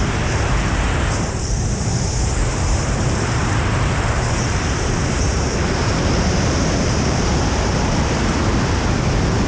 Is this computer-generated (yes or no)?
yes